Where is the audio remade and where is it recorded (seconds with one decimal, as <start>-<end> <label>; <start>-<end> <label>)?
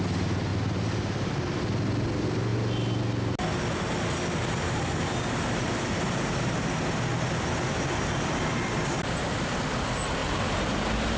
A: 0.0-10.2 recorded; 10.2-11.2 remade